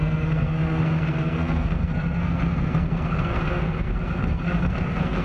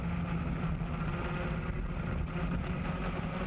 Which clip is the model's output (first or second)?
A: first